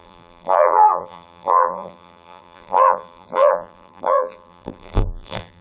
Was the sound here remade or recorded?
remade